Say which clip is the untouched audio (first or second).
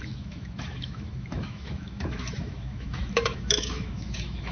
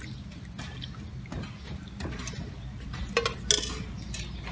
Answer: second